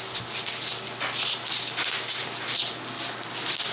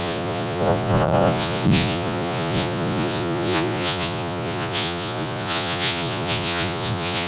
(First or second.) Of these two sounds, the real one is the first